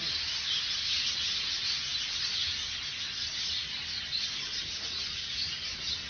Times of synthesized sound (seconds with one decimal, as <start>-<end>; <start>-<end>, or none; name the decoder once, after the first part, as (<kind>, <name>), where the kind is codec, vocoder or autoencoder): none